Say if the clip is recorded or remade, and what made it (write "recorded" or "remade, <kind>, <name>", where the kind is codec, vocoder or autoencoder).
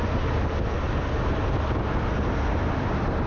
recorded